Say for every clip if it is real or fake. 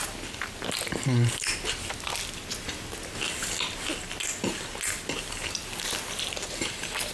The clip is real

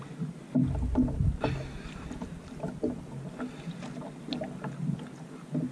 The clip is real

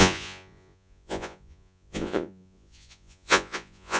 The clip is fake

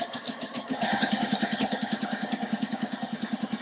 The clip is fake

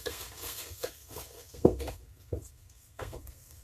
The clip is fake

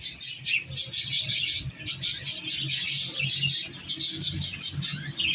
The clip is real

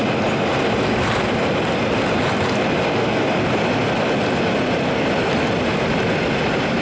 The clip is real